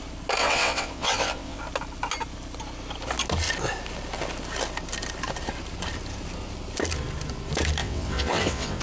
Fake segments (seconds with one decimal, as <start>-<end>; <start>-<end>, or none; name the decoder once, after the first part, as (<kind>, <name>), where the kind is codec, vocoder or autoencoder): 0.4-1.6 (vocoder, WaveNeXt); 7.8-8.8